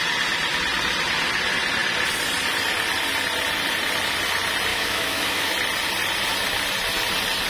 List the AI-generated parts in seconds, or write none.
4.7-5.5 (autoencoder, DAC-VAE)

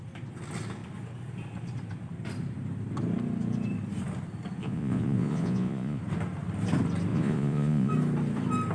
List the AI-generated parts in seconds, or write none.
4.6-6.0 (vocoder, Vocos); 7.1-7.9

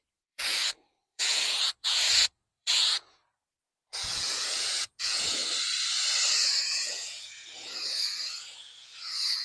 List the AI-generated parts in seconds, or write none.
0.0-5.4 (vocoder, Vocos); 6.6-8.9

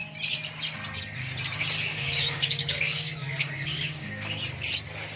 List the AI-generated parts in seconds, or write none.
1.9-4.4 (codec, DAC)

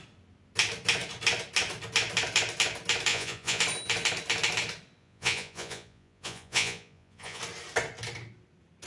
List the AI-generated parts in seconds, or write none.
3.1-3.6 (vocoder, Vocos); 5.0-7.4

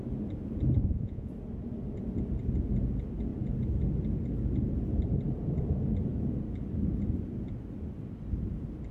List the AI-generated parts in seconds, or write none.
0.8-1.3 (vocoder, Vocos)

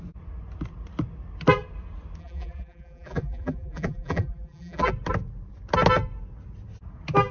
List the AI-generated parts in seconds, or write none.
2.2-4.9 (vocoder, BigVGAN v2)

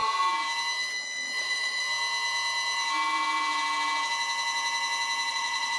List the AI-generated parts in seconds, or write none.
1.4-1.8 (vocoder, Vocos); 5.3-5.8